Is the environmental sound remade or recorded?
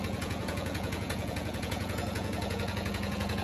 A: remade